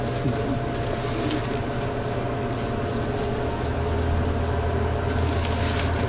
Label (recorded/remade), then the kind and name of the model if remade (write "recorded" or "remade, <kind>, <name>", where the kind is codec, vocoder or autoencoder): recorded